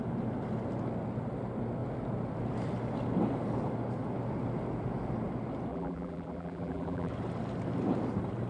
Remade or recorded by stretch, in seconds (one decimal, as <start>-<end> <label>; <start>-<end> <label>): 0.0-5.7 recorded; 5.7-7.1 remade; 7.1-8.5 recorded